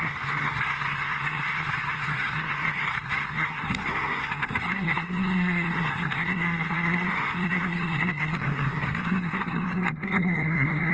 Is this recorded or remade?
remade